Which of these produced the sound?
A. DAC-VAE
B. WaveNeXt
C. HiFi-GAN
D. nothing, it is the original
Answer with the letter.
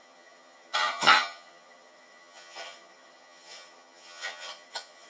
C